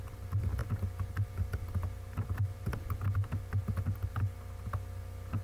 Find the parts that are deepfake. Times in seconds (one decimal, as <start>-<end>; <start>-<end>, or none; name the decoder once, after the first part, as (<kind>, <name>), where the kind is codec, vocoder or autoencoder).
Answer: none